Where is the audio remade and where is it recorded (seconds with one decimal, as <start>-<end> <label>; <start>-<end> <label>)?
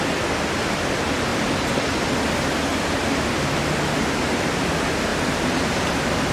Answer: 0.0-1.3 recorded; 1.3-2.2 remade; 2.2-2.7 recorded; 2.7-3.3 remade; 3.3-5.1 recorded; 5.1-6.3 remade